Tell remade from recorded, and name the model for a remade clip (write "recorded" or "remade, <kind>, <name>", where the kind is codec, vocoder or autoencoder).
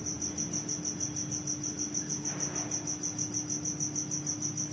recorded